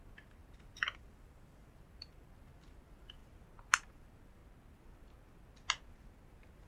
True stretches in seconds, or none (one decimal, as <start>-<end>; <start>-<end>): 3.2-4.0; 4.4-6.7